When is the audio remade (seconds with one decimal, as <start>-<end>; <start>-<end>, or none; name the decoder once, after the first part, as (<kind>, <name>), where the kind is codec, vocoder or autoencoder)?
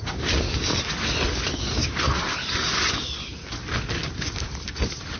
none